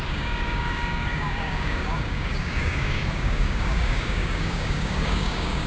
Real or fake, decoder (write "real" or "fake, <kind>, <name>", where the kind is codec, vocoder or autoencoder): fake, codec, DAC